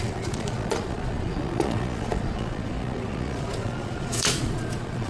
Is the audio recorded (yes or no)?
no